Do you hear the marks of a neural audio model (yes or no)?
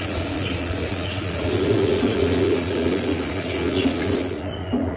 yes